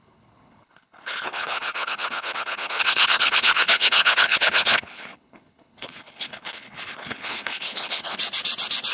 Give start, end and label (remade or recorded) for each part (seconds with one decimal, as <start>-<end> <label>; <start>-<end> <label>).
0.0-8.2 remade; 8.2-8.9 recorded